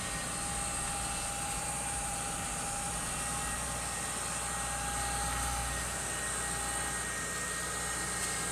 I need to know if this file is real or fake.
real